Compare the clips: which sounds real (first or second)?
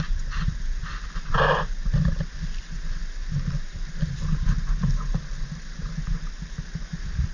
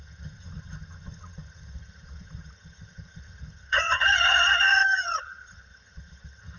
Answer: first